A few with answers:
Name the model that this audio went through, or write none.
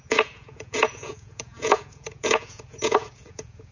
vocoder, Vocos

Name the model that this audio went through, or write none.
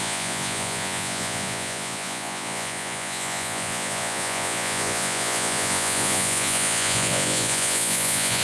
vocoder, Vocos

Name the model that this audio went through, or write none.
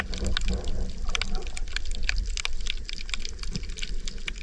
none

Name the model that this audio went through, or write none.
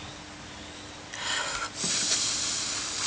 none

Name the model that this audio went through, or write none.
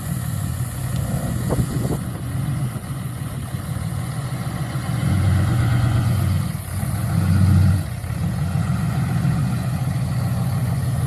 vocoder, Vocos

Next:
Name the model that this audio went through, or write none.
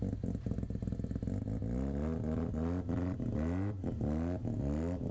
none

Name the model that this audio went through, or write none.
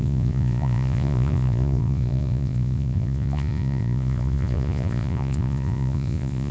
vocoder, Vocos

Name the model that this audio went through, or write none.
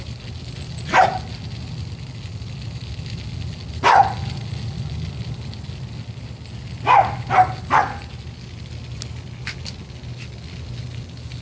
none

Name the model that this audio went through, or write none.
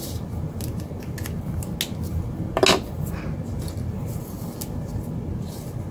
none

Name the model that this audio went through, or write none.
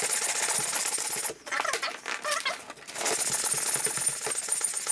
none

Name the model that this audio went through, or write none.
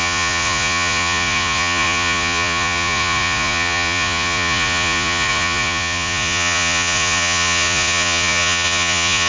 vocoder, Vocos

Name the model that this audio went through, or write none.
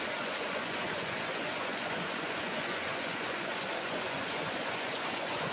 vocoder, Vocos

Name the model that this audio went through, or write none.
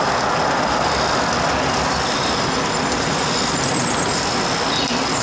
none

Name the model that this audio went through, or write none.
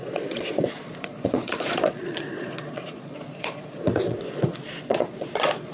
vocoder, Vocos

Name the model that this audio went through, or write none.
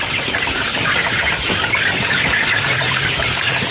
none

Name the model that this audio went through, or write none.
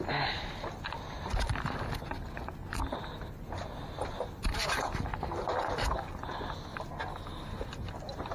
none